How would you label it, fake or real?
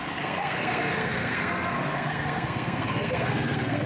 fake